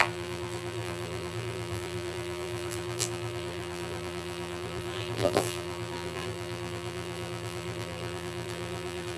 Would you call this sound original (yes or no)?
no